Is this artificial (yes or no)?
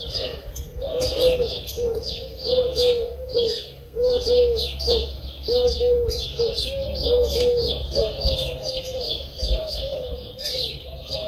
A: yes